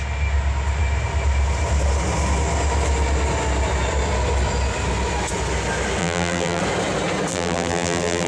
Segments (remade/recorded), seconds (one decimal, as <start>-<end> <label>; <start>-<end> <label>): 0.0-6.0 recorded; 6.0-6.6 remade; 6.6-7.3 recorded; 7.3-8.3 remade